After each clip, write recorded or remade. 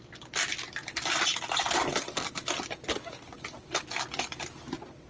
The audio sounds recorded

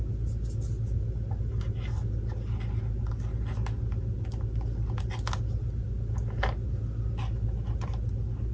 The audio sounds recorded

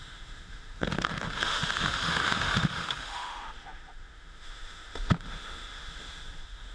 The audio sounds remade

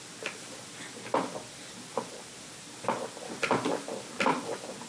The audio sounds recorded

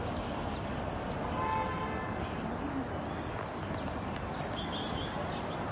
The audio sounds recorded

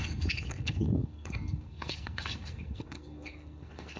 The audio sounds remade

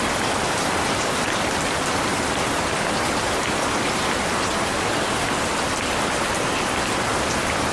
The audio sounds recorded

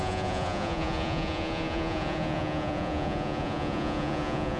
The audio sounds remade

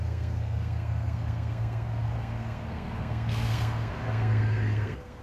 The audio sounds remade